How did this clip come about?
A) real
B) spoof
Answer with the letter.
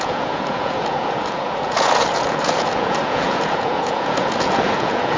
B